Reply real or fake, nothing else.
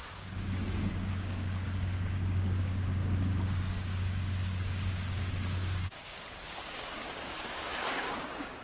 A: fake